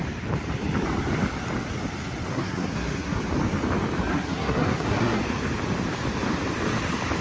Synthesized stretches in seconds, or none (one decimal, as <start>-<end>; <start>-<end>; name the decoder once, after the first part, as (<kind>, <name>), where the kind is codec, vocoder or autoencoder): 2.3-3.2 (codec, SNAC); 4.1-5.2